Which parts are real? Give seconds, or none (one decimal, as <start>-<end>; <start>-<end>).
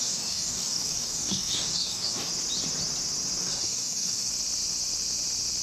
2.3-3.4; 4.3-5.6